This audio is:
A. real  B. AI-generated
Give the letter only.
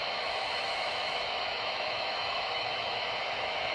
B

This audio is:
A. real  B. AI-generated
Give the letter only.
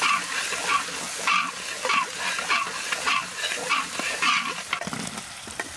A